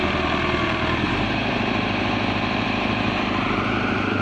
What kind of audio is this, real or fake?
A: fake